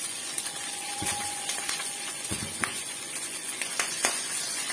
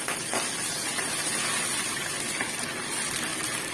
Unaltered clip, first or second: second